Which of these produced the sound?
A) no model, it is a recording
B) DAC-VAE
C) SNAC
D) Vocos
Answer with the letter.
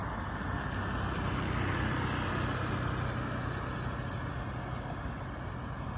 A